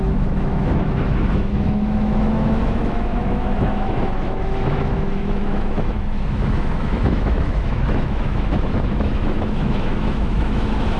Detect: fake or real fake